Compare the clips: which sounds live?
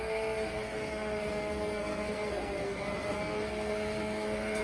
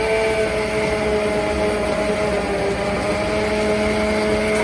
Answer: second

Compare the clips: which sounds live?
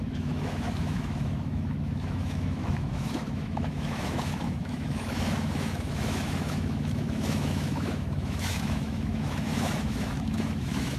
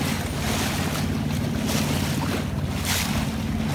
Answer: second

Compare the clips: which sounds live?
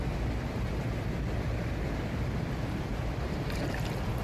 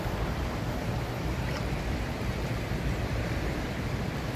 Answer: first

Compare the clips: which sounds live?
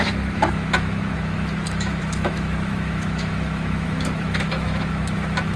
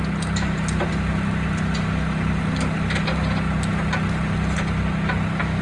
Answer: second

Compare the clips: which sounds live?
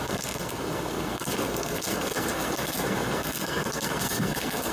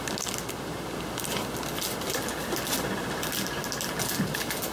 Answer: second